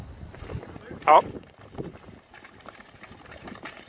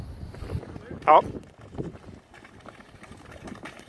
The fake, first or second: first